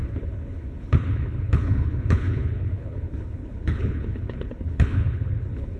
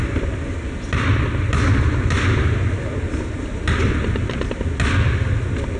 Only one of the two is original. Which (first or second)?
second